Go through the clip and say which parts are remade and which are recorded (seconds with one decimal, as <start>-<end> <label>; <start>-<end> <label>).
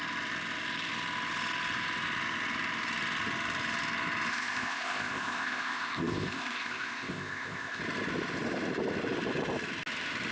0.0-4.3 recorded; 4.3-7.8 remade; 7.8-10.3 recorded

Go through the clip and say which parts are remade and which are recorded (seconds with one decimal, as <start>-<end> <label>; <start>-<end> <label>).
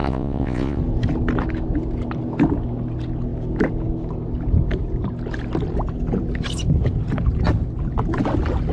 0.0-0.8 remade; 0.8-8.7 recorded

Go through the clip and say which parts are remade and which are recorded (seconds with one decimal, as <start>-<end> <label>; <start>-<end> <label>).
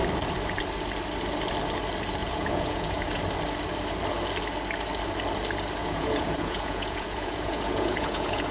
0.0-2.2 recorded; 2.2-3.2 remade; 3.2-5.8 recorded; 5.8-8.5 remade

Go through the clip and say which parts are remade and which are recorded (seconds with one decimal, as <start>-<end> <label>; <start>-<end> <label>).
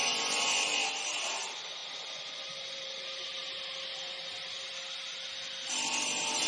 0.0-0.6 remade; 0.6-1.8 recorded; 1.8-2.8 remade; 2.8-6.5 recorded